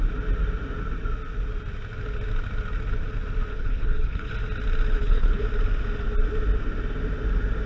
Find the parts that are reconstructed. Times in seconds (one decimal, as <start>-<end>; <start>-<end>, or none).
3.5-4.3; 4.9-5.4